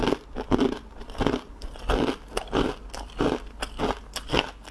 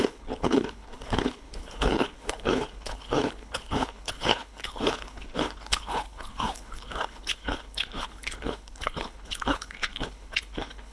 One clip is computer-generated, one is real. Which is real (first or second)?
first